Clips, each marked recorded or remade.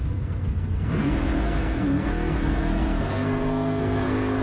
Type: remade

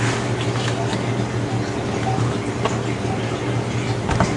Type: recorded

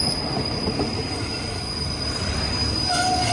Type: recorded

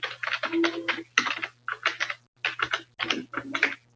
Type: recorded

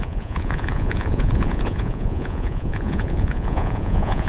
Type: remade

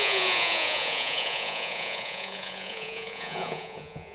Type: remade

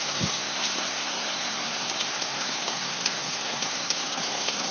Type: remade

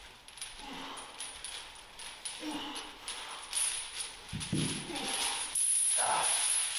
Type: recorded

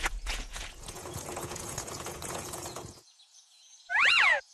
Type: remade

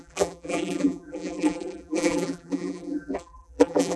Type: remade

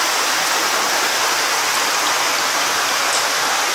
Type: recorded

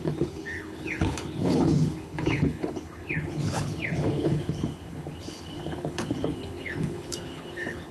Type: remade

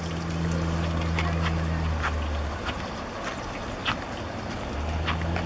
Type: recorded